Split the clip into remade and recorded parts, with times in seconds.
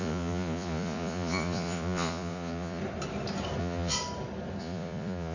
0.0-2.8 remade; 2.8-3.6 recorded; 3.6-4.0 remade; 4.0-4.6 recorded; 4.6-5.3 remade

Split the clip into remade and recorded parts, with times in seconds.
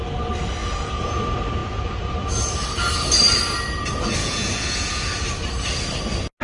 0.0-0.6 recorded; 0.6-1.2 remade; 1.2-1.6 recorded; 1.6-2.1 remade; 2.1-4.2 recorded; 4.2-5.2 remade; 5.2-6.4 recorded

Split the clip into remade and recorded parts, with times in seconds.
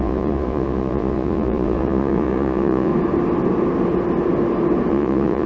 0.0-2.9 remade; 2.9-4.9 recorded; 4.9-5.5 remade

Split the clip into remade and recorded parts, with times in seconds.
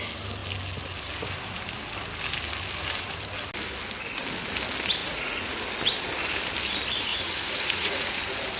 0.0-5.0 recorded; 5.0-5.6 remade; 5.6-7.1 recorded; 7.1-8.2 remade; 8.2-8.6 recorded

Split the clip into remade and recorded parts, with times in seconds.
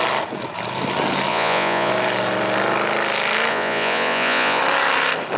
0.0-1.3 recorded; 1.3-1.9 remade; 1.9-3.5 recorded; 3.5-4.6 remade; 4.6-5.4 recorded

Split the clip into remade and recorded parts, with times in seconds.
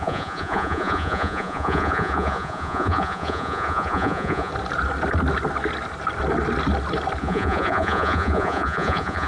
0.0-4.5 remade; 4.5-7.2 recorded; 7.2-9.3 remade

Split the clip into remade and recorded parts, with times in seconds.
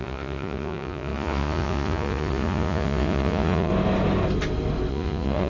0.0-3.7 remade; 3.7-4.9 recorded; 4.9-5.5 remade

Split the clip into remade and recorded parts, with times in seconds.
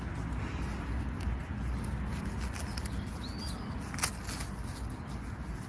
0.0-5.7 recorded